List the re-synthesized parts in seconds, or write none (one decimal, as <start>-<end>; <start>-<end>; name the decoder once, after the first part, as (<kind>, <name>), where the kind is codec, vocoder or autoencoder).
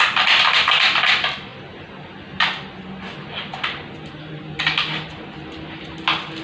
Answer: none